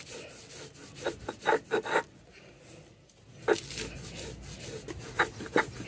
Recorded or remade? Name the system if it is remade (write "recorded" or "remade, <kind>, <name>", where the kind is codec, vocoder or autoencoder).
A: recorded